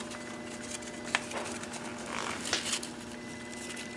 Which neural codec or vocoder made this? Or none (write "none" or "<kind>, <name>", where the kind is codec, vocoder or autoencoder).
none